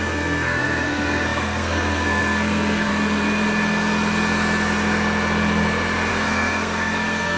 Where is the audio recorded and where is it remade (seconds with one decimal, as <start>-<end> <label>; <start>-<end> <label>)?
0.0-2.9 remade; 2.9-6.1 recorded; 6.1-7.4 remade